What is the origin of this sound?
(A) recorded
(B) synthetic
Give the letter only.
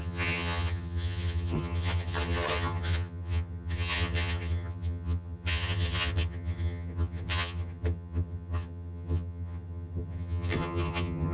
B